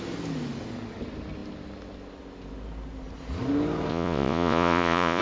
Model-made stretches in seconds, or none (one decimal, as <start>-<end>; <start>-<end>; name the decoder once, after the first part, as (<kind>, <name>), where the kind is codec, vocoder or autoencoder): 3.9-5.2 (vocoder, Vocos)